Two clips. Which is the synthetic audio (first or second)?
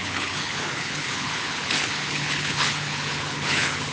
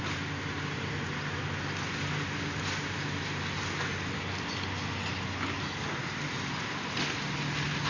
first